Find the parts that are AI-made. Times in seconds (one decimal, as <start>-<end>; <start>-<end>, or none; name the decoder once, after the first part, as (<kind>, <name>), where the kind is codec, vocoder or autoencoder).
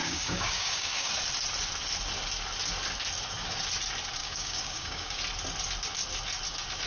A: 0.0-1.1 (codec, DAC); 4.2-5.2